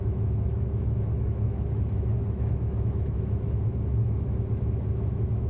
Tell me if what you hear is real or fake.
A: fake